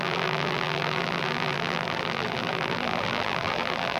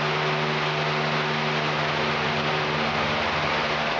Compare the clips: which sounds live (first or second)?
second